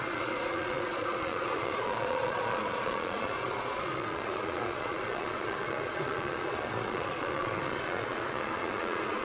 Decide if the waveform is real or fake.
fake